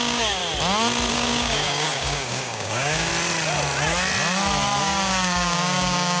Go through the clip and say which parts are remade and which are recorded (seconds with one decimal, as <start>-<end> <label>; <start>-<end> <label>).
0.0-0.4 remade; 0.4-1.1 recorded; 1.1-3.1 remade; 3.1-4.8 recorded; 4.8-6.2 remade